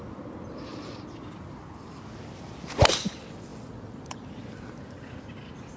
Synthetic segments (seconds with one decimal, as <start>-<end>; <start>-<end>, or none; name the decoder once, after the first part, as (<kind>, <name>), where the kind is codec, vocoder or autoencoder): none